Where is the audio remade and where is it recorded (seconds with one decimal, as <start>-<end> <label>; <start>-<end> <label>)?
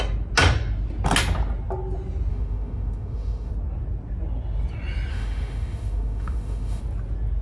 0.0-2.3 recorded; 2.3-3.5 remade; 3.5-5.1 recorded; 5.1-6.8 remade; 6.8-7.4 recorded